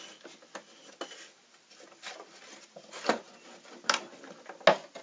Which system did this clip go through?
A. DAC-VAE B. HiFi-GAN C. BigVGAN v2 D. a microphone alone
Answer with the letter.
D